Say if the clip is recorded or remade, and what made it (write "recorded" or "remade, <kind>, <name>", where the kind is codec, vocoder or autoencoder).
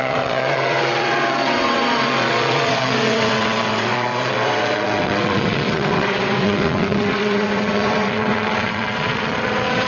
remade, vocoder, WaveNeXt